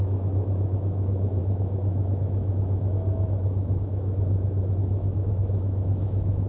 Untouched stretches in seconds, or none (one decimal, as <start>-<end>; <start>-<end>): none

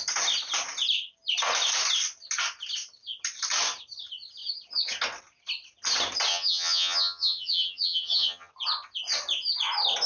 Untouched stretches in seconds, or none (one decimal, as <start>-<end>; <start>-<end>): 0.0-6.3; 8.5-10.1

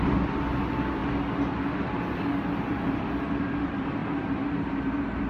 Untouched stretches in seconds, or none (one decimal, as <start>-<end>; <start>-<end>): 0.0-5.3